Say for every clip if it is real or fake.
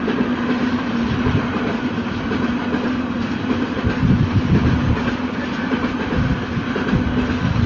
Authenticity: real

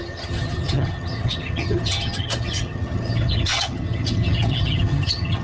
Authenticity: fake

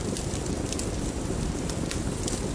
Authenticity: real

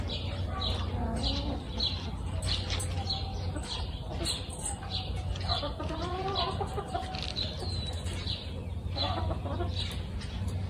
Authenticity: real